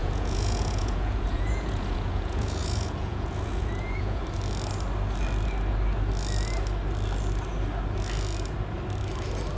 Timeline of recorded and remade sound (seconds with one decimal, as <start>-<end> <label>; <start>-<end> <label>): 0.0-4.2 remade; 4.2-9.6 recorded